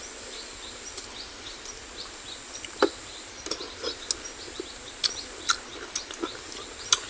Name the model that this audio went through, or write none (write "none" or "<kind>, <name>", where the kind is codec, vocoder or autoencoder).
none